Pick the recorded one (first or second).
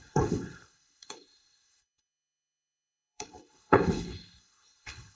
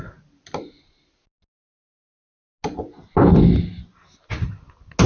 second